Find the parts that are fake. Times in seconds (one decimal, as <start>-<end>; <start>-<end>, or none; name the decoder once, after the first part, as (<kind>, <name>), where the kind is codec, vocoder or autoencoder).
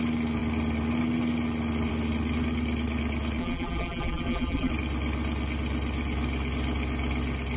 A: 3.4-4.7 (vocoder, BigVGAN v2)